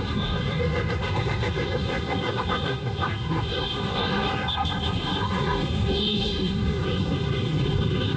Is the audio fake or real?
fake